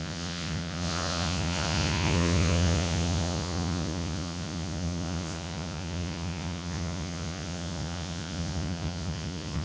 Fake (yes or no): yes